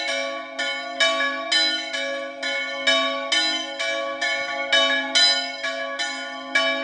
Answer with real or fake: real